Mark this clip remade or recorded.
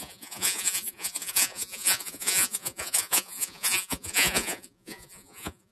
remade